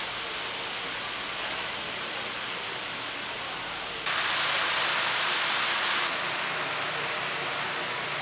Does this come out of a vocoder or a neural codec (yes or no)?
no